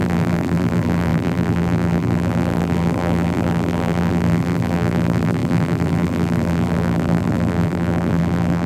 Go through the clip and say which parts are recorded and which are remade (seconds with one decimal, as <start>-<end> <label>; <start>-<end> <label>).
0.0-8.7 remade